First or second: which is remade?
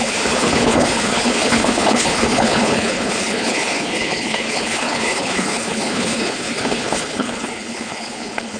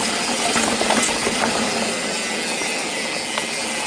first